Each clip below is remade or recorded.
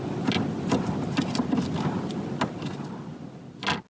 recorded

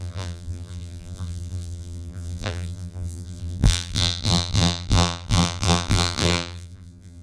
remade